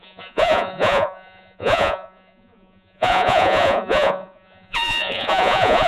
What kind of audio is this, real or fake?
fake